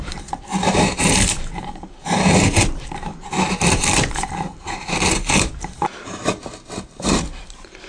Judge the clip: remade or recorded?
remade